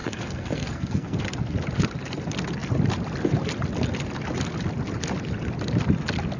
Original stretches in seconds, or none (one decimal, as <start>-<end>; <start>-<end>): 1.2-6.4

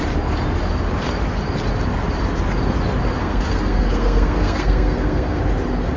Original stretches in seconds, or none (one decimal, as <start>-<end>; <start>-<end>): 0.0-3.2; 5.4-6.0

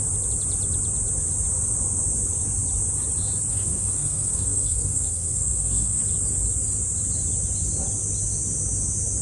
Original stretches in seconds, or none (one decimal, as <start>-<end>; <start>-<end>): 0.0-3.5; 6.0-9.2

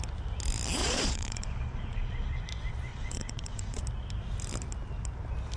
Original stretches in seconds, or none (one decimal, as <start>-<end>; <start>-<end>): 0.0-0.8; 2.4-2.9; 3.8-5.6